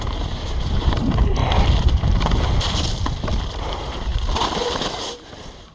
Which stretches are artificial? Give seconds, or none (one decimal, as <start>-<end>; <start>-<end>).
0.0-1.4; 3.6-4.1; 4.9-5.7